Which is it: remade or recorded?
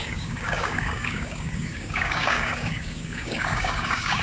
remade